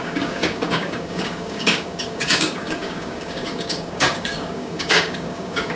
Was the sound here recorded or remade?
remade